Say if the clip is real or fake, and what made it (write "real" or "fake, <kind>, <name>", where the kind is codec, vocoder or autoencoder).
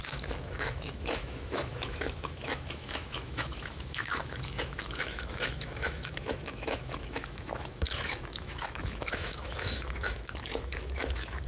fake, autoencoder, DAC-VAE